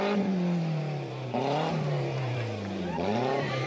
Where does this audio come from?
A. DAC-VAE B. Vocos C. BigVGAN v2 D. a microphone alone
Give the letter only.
C